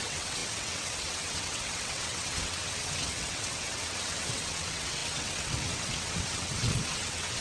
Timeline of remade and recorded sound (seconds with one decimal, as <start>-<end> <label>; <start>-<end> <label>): 0.0-7.4 remade